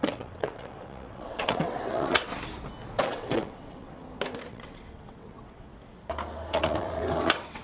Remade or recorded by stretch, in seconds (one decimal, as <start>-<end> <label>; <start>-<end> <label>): 0.0-2.3 remade; 2.3-3.0 recorded; 3.0-4.0 remade; 4.0-4.5 recorded; 4.5-5.7 remade; 5.7-6.5 recorded; 6.5-7.6 remade